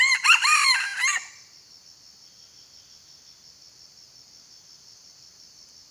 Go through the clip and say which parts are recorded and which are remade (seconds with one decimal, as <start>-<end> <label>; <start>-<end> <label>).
0.0-5.9 recorded